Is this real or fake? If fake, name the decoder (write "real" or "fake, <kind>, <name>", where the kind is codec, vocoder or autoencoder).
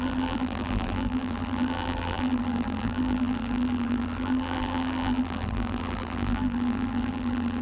fake, vocoder, BigVGAN v2